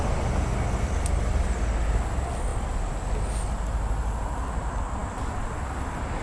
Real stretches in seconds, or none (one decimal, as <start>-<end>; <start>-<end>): 0.0-6.2